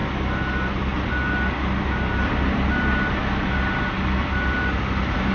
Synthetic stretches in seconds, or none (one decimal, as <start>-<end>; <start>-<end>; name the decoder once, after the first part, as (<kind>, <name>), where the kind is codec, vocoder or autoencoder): none